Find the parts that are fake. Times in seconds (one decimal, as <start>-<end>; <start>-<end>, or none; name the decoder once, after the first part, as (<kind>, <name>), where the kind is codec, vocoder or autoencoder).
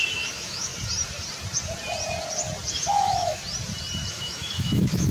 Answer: 0.0-0.7 (autoencoder, DAC-VAE); 2.7-3.4; 4.1-5.1